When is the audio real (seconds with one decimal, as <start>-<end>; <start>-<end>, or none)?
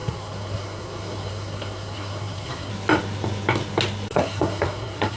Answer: 2.7-4.1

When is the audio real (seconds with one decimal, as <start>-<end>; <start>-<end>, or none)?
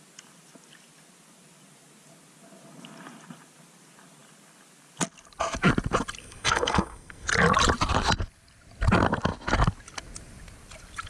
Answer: 0.0-6.2; 7.3-11.1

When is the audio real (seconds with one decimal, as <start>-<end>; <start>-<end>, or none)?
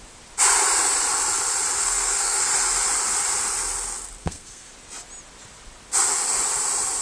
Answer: 0.0-1.8; 2.4-4.2; 4.7-7.0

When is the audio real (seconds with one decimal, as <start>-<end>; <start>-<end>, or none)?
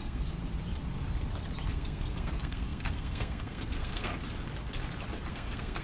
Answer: 0.4-1.7; 4.1-5.3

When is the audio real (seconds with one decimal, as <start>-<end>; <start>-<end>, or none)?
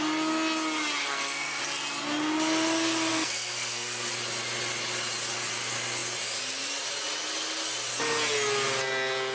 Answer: 0.0-1.0; 1.6-3.1; 4.1-9.3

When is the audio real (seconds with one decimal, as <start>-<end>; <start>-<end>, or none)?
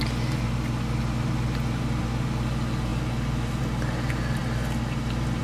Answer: 0.0-5.4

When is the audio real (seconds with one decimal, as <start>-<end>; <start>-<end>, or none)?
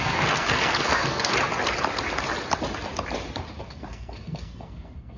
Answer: 1.3-3.6